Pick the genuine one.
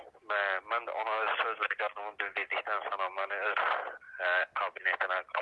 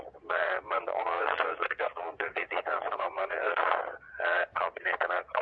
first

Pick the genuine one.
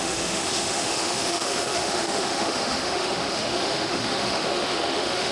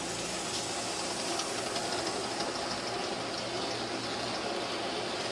second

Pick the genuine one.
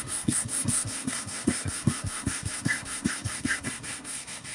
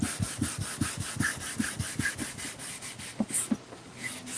second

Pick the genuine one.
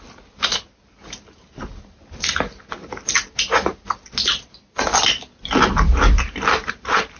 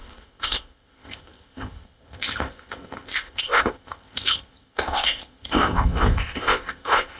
first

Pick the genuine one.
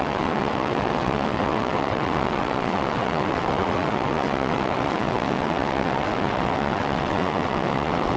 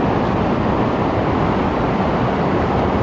second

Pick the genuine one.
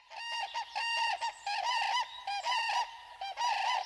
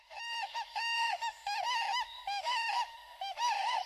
first